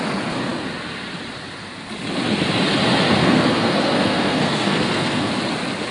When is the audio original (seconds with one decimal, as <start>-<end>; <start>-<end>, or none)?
0.0-3.2; 5.3-5.9